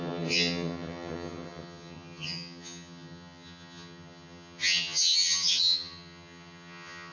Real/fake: fake